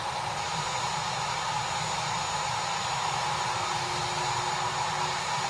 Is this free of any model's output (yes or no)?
yes